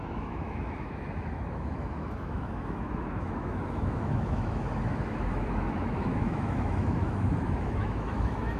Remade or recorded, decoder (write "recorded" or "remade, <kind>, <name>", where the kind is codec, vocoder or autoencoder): remade, autoencoder, DAC-VAE